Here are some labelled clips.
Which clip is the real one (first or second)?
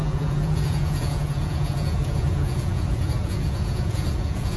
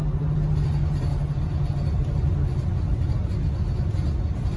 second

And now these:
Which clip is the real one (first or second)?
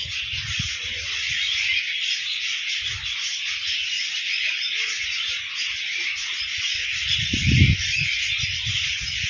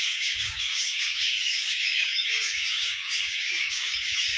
first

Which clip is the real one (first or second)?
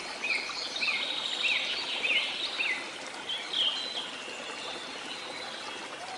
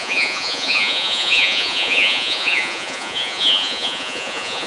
first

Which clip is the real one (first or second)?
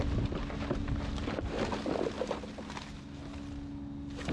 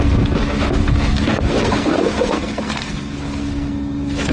first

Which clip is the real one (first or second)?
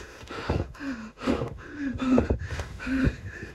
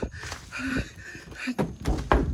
second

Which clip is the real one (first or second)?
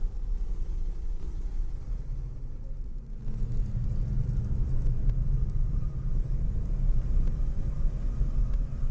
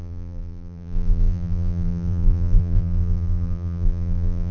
first